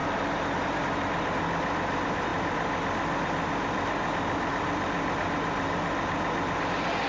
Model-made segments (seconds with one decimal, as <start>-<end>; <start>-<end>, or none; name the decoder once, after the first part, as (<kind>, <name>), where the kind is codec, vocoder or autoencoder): none